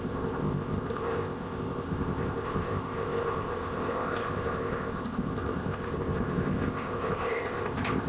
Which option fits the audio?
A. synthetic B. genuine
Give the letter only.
A